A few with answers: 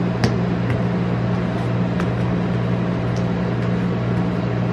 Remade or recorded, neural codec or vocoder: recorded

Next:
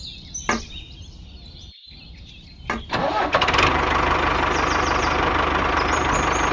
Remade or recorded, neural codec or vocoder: recorded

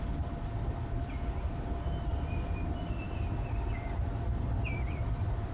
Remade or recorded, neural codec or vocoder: remade, vocoder, BigVGAN v2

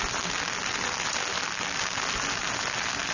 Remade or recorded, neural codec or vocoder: recorded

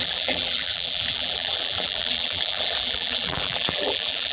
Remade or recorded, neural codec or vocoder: remade, vocoder, BigVGAN v2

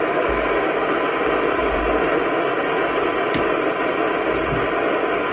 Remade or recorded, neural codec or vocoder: recorded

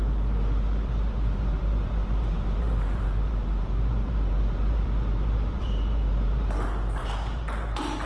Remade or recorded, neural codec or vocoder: remade, vocoder, BigVGAN v2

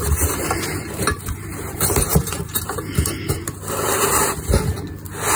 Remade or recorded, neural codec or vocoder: remade, vocoder, BigVGAN v2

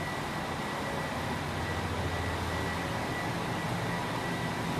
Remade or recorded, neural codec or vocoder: recorded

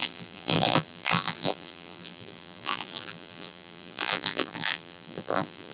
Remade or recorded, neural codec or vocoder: remade, vocoder, BigVGAN v2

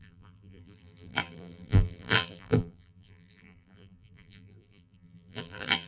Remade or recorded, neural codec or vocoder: remade, vocoder, BigVGAN v2